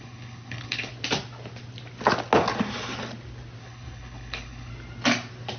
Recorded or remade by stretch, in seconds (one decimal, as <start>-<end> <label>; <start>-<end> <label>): 0.0-0.9 remade; 0.9-3.6 recorded; 3.6-4.7 remade; 4.7-5.6 recorded